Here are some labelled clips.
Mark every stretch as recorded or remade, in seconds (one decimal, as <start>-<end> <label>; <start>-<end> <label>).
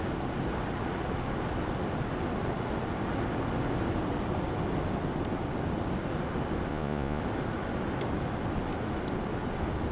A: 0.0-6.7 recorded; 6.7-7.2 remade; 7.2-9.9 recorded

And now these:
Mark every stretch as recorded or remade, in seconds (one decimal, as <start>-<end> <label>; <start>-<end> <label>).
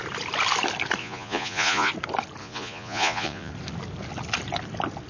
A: 0.0-1.0 recorded; 1.0-1.9 remade; 1.9-2.4 recorded; 2.4-3.5 remade; 3.5-5.1 recorded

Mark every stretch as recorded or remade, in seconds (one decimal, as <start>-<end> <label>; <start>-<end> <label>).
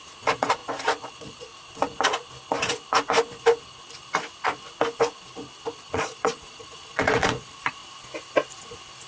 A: 0.0-0.6 remade; 0.6-1.1 recorded; 1.1-1.5 remade; 1.5-5.8 recorded; 5.8-7.8 remade; 7.8-9.1 recorded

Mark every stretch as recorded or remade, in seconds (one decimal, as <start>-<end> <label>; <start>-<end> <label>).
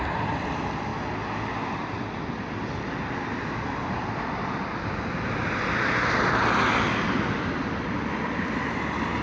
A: 0.0-9.2 recorded